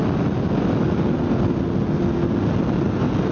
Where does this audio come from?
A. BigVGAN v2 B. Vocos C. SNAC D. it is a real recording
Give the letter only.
D